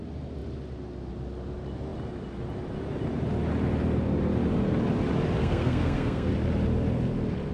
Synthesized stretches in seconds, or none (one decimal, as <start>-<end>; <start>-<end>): 5.4-6.3